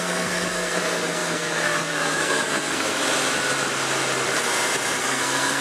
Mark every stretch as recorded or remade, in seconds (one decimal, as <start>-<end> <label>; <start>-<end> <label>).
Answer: 0.0-3.0 remade; 3.0-5.0 recorded; 5.0-5.6 remade